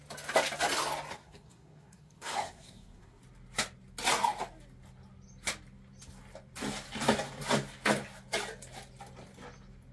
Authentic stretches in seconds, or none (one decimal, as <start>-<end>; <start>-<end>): 0.0-1.1; 3.2-9.9